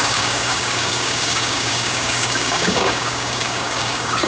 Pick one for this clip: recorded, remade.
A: remade